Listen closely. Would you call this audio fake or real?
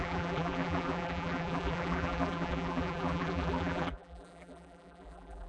fake